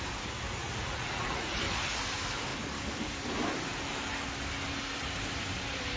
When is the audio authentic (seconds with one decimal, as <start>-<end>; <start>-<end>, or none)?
0.0-0.6; 1.6-6.0